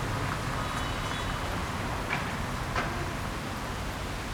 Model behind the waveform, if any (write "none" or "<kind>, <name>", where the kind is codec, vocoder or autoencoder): none